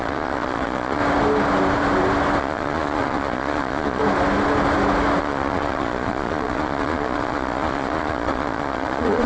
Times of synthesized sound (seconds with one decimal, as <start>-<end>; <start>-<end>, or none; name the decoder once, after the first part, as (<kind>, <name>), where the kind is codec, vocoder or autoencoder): 0.0-1.0 (vocoder, Vocos); 2.4-4.0; 5.2-9.3